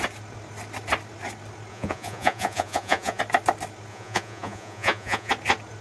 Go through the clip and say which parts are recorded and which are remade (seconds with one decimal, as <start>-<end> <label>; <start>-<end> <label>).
0.0-1.7 recorded; 1.7-3.2 remade; 3.2-3.9 recorded; 3.9-5.3 remade; 5.3-5.8 recorded